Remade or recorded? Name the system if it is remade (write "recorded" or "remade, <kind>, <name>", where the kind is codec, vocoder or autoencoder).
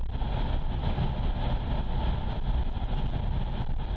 recorded